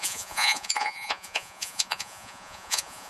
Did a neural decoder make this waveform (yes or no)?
yes